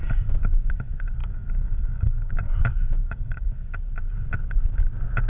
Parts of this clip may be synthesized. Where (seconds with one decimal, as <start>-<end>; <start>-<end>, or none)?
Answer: 1.2-2.5; 3.0-3.5